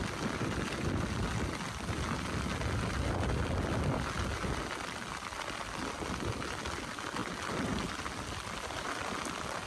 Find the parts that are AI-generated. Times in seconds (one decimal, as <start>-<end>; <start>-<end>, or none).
none